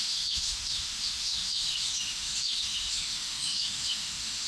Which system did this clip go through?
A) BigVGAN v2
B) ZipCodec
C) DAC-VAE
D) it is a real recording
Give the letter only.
C